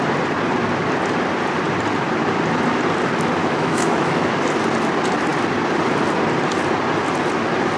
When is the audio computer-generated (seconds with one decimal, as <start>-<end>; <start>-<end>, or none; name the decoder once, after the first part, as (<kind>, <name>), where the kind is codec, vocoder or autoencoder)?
3.4-4.3 (autoencoder, DAC-VAE)